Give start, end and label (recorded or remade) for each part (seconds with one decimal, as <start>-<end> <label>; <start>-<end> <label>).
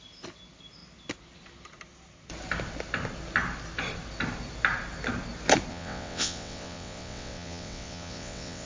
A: 0.0-5.7 recorded; 5.7-8.7 remade